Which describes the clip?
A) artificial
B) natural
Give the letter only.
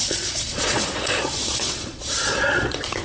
A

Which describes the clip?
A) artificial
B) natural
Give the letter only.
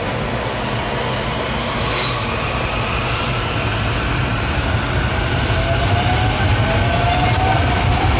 B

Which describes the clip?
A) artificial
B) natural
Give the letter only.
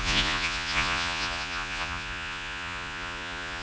A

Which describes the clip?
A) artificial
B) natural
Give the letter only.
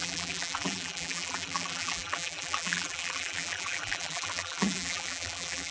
A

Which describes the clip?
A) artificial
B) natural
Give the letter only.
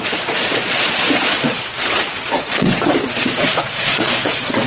A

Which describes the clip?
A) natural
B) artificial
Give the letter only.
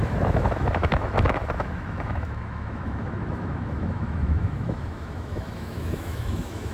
B